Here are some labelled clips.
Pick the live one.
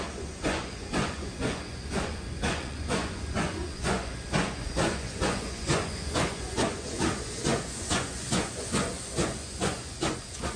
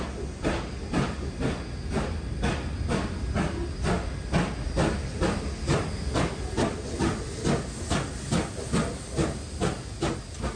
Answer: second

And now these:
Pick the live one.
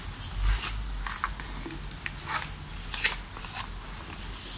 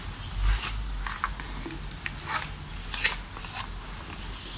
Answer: first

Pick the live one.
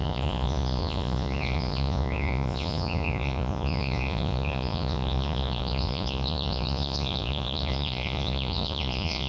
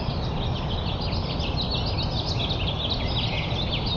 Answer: second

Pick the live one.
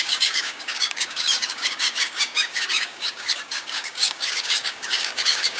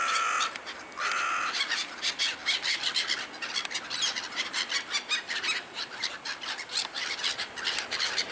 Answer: second